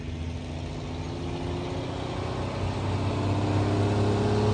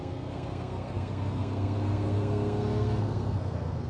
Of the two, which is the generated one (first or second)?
second